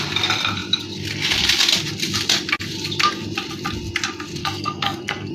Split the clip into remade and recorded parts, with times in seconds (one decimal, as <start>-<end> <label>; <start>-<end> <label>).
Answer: 0.0-4.4 recorded; 4.4-5.3 remade

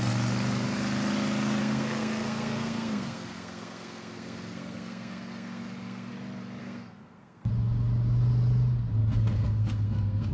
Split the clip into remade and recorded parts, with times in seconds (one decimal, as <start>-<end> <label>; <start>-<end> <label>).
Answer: 0.0-1.6 recorded; 1.6-6.1 remade; 6.1-6.6 recorded; 6.6-7.5 remade; 7.5-9.0 recorded; 9.0-10.3 remade

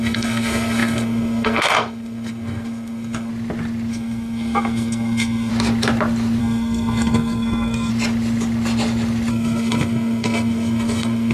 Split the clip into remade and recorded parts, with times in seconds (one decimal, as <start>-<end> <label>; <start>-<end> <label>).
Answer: 0.0-3.3 remade; 3.3-3.9 recorded; 3.9-5.5 remade; 5.5-6.4 recorded; 6.4-7.9 remade; 7.9-9.3 recorded; 9.3-11.3 remade

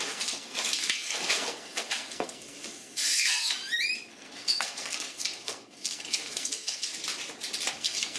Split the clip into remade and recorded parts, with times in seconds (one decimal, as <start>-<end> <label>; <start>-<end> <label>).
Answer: 0.0-3.6 remade; 3.6-4.1 recorded; 4.1-6.9 remade; 6.9-7.7 recorded; 7.7-8.2 remade

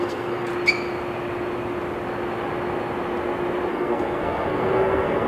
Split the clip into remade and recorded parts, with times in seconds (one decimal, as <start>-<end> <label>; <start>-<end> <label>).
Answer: 0.0-0.5 remade; 0.5-3.7 recorded; 3.7-5.3 remade

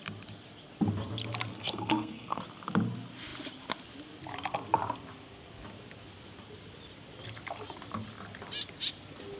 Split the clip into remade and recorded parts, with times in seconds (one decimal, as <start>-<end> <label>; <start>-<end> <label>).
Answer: 0.0-1.5 recorded; 1.5-2.4 remade; 2.4-9.4 recorded

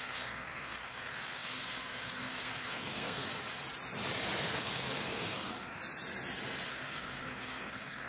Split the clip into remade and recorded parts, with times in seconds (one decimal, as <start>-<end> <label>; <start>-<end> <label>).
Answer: 0.0-3.3 remade; 3.3-4.5 recorded; 4.5-5.8 remade; 5.8-6.7 recorded; 6.7-8.1 remade

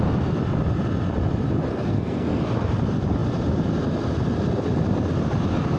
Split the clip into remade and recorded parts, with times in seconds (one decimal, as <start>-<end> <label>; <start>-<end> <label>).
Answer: 0.0-1.7 recorded; 1.7-2.4 remade; 2.4-5.8 recorded